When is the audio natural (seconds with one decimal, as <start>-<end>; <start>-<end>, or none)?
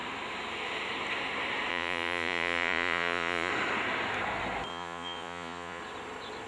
0.0-1.7; 3.5-4.7; 5.8-6.5